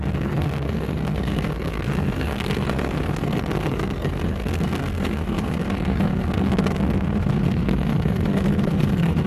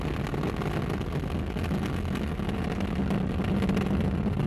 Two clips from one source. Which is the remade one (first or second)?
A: first